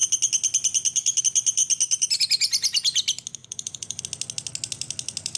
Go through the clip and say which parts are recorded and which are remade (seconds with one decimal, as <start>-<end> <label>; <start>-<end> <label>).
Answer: 0.0-3.4 recorded; 3.4-4.0 remade; 4.0-5.4 recorded